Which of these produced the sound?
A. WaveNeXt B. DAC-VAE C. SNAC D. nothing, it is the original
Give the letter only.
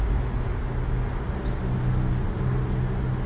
D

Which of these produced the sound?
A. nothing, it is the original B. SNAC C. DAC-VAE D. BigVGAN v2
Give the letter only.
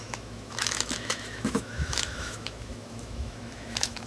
C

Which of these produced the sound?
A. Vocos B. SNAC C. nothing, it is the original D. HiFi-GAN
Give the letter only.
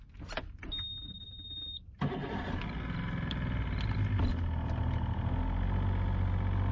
C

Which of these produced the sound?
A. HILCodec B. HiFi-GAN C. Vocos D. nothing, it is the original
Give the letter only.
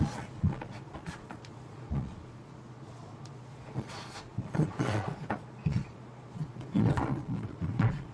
C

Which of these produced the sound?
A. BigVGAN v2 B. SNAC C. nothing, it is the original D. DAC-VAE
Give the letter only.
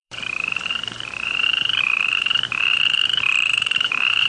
A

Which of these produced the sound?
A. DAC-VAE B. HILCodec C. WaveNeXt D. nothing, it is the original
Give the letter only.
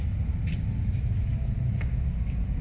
D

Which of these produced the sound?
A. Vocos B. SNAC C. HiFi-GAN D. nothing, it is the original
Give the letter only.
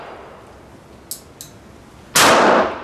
D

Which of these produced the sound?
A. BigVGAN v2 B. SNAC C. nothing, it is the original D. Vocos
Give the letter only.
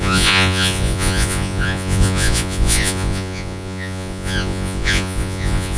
D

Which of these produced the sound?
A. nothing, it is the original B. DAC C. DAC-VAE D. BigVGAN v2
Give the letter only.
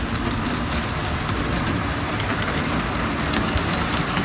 A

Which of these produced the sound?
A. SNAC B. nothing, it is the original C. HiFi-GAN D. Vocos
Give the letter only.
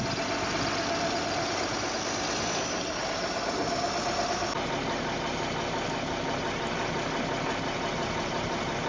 B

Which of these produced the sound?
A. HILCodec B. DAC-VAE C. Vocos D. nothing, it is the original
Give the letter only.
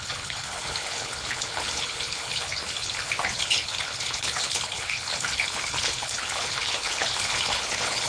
A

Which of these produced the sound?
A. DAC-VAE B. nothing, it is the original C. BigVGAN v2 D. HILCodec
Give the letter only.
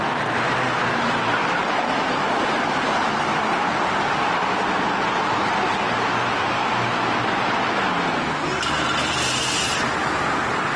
B